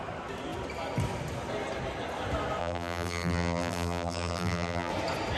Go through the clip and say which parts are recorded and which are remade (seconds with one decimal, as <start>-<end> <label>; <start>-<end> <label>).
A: 0.0-2.6 recorded; 2.6-4.9 remade; 4.9-5.4 recorded